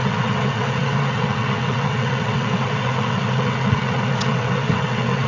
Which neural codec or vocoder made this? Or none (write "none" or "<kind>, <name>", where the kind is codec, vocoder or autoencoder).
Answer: vocoder, WaveNeXt